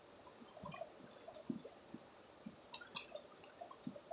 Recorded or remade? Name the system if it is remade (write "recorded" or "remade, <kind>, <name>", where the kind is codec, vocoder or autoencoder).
recorded